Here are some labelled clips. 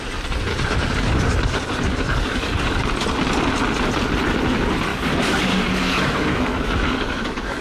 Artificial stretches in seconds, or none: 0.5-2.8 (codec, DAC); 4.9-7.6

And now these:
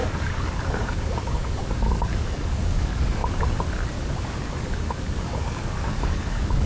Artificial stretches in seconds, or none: 0.0-3.2 (codec, DAC); 4.1-6.7

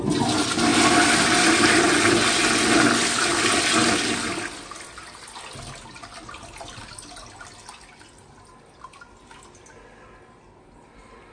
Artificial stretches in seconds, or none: none

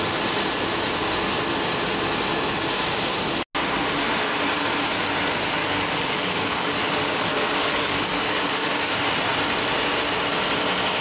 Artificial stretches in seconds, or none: 5.6-8.9 (codec, DAC)

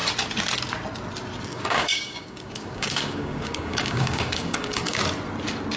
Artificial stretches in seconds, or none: 1.5-5.0 (codec, DAC)

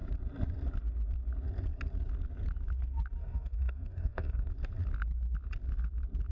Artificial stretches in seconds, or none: 3.2-4.5 (codec, DAC)

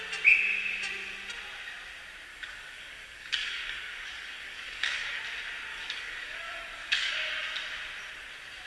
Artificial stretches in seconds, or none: 2.3-5.2 (codec, DAC); 5.7-7.1

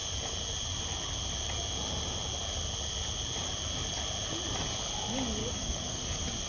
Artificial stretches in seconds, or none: 5.4-6.0 (codec, DAC)